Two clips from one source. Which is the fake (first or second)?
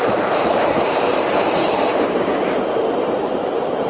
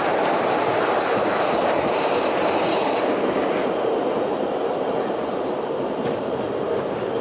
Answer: first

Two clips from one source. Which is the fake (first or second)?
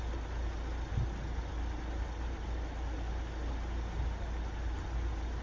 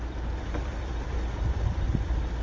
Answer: second